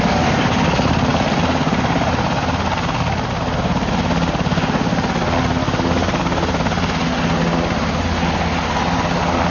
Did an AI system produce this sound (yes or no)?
no